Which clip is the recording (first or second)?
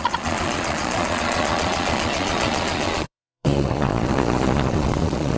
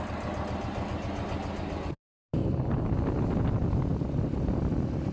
second